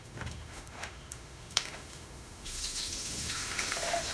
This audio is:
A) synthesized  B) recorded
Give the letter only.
A